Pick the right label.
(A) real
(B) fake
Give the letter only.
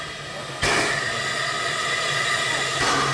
A